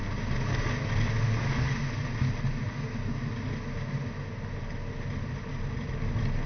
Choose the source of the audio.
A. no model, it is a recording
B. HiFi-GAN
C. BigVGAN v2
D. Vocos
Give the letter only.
A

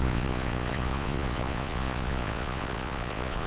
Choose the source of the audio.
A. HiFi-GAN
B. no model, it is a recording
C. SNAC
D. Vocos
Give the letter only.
D